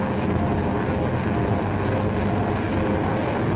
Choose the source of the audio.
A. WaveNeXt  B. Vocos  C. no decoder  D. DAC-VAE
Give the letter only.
C